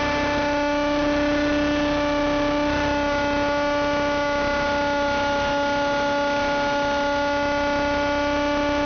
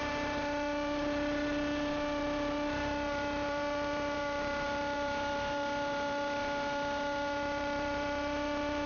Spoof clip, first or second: second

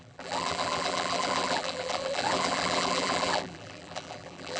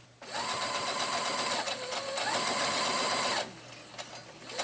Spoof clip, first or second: first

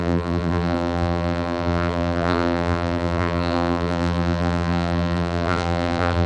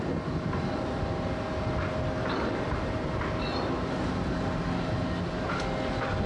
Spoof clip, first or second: first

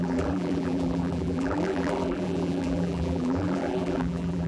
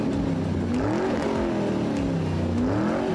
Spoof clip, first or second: first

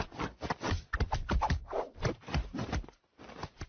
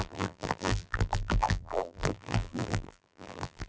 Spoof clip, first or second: second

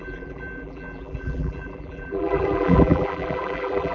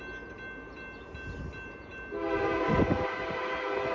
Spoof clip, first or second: first